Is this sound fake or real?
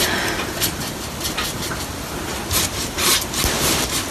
real